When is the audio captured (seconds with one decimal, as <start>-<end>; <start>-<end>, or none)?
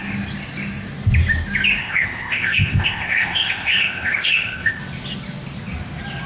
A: 0.0-1.8; 4.8-6.3